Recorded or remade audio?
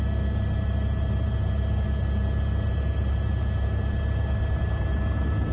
recorded